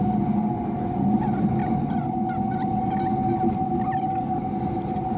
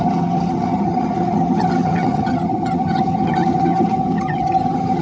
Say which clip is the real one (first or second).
first